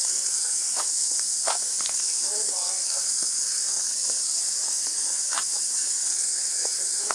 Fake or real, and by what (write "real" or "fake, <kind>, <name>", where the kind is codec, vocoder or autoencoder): fake, codec, SNAC